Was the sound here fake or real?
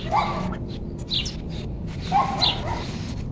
real